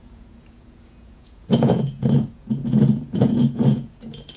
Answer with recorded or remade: remade